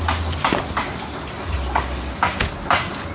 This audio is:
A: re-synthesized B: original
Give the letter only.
B